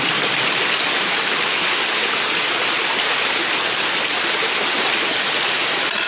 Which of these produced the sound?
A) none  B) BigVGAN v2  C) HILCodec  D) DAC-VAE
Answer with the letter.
A